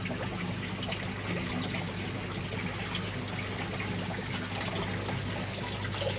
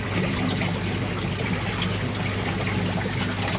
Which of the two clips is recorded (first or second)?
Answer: first